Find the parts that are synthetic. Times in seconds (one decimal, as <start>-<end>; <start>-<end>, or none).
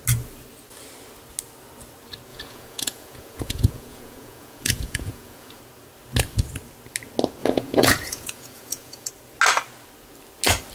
2.3-5.6; 7.4-9.1